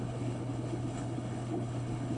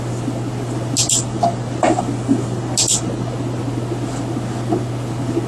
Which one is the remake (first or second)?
first